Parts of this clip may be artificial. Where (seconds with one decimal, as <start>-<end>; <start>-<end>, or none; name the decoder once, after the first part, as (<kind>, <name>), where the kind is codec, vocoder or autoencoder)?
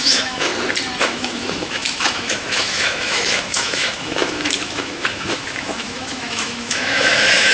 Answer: 0.0-0.5 (autoencoder, DAC-VAE); 1.0-7.5